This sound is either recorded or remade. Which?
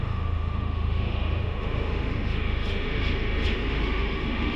remade